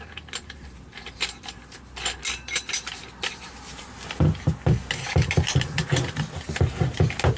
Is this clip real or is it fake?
real